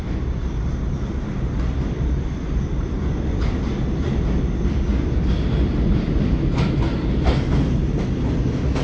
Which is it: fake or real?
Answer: real